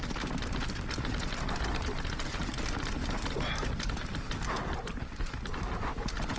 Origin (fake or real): real